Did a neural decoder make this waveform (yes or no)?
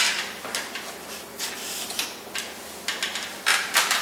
no